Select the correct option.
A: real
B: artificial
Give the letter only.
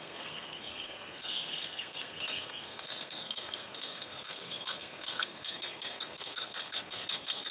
B